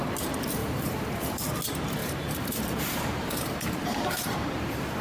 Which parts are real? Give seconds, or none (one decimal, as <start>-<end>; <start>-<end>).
0.0-0.6; 1.5-2.0